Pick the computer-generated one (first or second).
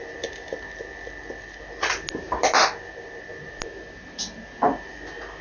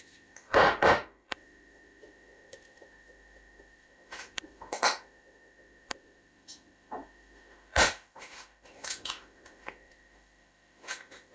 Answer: second